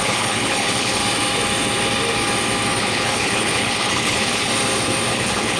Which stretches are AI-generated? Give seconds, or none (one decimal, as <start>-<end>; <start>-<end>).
0.0-1.0; 2.8-4.5; 5.1-5.6